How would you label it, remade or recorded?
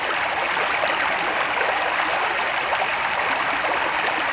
recorded